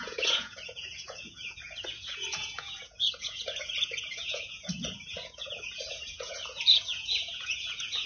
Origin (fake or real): fake